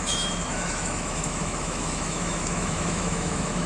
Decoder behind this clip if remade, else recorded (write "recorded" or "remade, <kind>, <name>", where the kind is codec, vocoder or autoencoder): remade, autoencoder, DAC-VAE